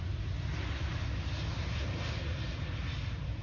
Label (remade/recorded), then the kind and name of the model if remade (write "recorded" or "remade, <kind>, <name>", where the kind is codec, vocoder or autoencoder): recorded